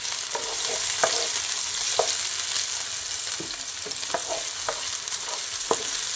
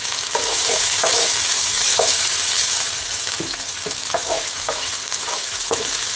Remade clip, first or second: second